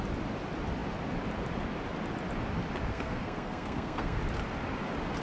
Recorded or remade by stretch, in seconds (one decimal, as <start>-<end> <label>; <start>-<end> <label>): 0.0-2.9 recorded; 2.9-4.2 remade; 4.2-5.2 recorded